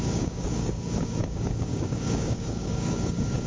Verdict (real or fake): fake